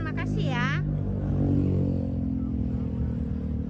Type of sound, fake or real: real